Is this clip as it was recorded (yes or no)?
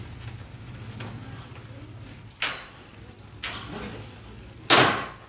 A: yes